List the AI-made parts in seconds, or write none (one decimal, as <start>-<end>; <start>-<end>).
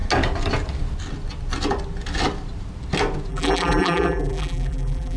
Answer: 3.3-5.2